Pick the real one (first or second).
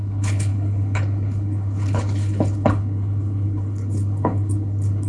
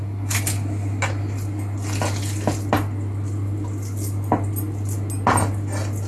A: second